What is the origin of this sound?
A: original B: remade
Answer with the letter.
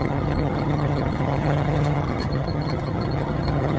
B